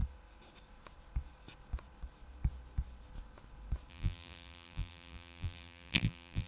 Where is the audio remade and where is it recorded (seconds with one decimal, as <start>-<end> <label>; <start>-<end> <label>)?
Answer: 0.0-3.9 recorded; 3.9-6.5 remade